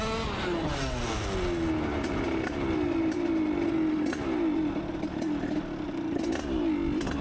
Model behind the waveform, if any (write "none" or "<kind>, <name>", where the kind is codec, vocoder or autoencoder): none